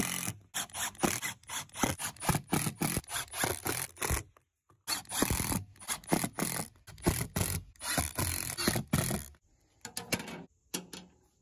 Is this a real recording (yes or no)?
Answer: yes